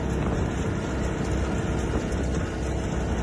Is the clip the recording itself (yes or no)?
yes